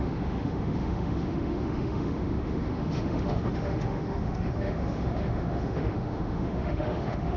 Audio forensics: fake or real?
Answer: fake